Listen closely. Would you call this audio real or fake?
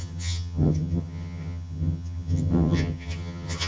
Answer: fake